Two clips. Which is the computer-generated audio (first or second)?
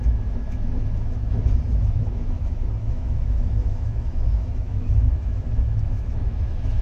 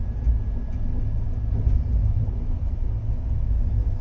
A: first